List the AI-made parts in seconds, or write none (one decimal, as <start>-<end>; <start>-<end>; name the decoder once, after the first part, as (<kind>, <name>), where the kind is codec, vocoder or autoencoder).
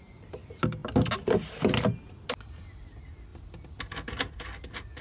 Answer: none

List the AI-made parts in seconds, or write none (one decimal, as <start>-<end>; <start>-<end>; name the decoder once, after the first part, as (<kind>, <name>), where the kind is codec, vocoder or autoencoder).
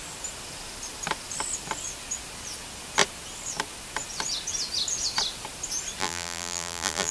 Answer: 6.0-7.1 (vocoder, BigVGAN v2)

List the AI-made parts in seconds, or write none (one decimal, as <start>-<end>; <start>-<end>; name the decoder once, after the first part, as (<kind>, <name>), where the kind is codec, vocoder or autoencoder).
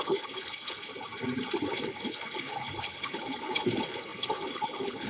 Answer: 0.0-0.9 (codec, HILCodec); 1.7-5.1